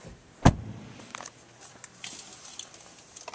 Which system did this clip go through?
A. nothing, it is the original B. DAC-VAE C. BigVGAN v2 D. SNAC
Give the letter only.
A